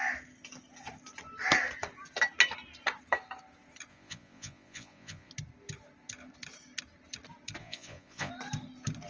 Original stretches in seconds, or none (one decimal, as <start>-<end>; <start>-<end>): 0.0-3.9; 5.3-7.6; 8.3-9.1